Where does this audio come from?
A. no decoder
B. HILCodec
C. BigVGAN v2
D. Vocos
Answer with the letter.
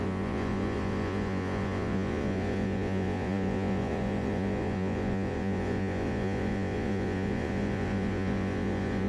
D